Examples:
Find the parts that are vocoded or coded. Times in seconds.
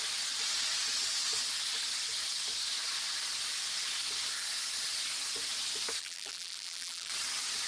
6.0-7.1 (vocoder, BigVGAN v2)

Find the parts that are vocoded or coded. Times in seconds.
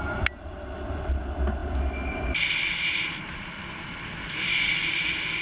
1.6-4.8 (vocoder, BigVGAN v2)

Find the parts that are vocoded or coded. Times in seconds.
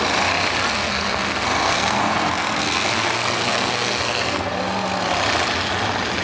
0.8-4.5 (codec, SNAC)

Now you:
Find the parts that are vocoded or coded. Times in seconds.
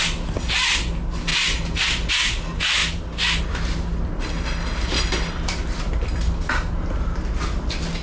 none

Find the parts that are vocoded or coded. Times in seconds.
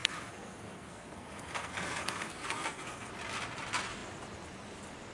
0.0-3.1 (codec, SNAC)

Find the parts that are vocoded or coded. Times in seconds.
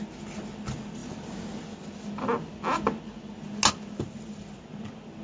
none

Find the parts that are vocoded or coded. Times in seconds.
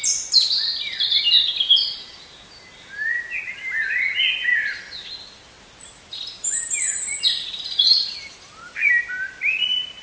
6.1-9.0 (vocoder, BigVGAN v2)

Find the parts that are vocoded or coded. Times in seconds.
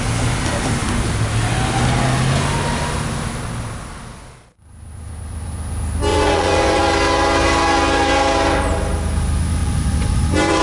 6.1-6.8 (vocoder, Vocos); 9.6-10.6